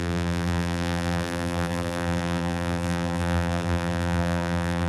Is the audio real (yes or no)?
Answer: no